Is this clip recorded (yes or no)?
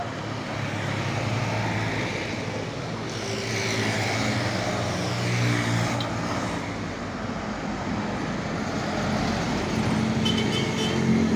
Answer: yes